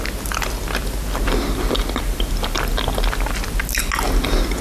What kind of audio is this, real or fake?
real